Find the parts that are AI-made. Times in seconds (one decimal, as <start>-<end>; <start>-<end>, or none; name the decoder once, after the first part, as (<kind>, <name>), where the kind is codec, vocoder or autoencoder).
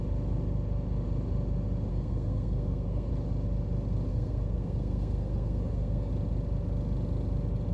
1.9-3.1 (codec, SNAC); 4.1-6.1